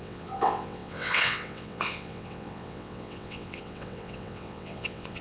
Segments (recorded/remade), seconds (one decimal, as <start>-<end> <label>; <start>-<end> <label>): 0.0-5.2 remade